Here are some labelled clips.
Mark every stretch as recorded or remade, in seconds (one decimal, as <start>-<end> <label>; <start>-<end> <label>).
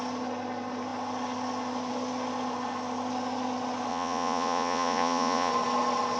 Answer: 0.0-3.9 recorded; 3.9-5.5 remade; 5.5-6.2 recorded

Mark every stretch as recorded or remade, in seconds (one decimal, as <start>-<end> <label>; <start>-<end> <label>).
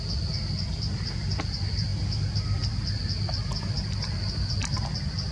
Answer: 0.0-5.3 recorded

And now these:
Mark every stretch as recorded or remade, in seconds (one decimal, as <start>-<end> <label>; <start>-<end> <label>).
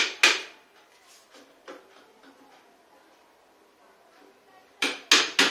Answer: 0.0-4.6 recorded; 4.6-5.1 remade; 5.1-5.5 recorded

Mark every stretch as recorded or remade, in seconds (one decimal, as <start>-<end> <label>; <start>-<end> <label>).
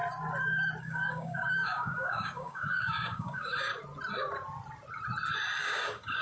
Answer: 0.0-0.8 recorded; 0.8-3.7 remade; 3.7-5.6 recorded; 5.6-6.2 remade